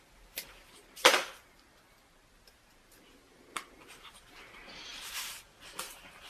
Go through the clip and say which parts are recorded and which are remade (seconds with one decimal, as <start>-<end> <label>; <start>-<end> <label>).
0.0-1.1 remade; 1.1-4.0 recorded; 4.0-6.3 remade

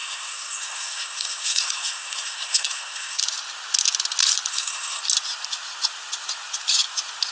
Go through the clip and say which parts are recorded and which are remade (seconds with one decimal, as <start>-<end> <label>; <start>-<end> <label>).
0.0-3.2 remade; 3.2-4.5 recorded; 4.5-5.0 remade; 5.0-7.3 recorded